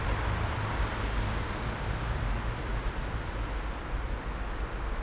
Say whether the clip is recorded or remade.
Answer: recorded